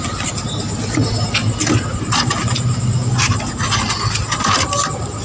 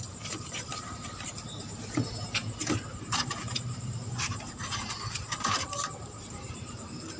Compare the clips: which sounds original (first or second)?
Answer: first